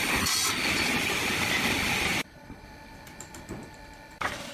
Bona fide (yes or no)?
yes